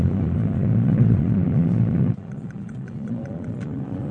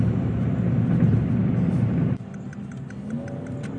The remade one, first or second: first